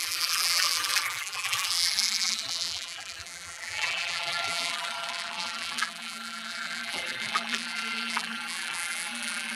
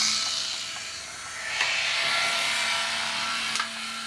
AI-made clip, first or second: first